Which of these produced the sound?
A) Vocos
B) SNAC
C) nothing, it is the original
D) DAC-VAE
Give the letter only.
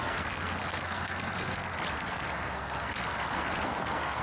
B